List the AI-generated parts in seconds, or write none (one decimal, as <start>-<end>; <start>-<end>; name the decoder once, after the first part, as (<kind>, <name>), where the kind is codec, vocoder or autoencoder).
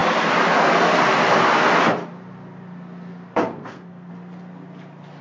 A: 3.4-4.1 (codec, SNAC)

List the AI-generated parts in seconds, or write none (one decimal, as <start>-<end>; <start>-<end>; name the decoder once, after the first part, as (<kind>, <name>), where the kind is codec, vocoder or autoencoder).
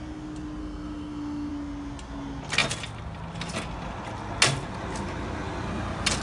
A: 0.6-1.5 (codec, SNAC)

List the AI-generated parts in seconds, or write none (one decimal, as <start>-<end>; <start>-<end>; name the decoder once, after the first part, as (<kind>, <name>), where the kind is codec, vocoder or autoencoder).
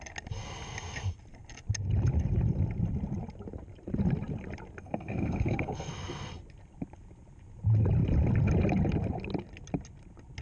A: 4.8-5.9 (codec, SNAC)